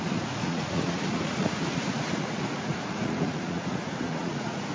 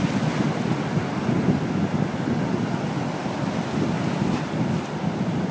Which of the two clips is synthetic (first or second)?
first